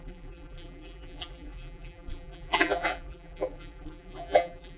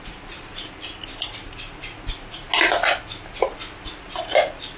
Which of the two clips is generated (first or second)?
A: first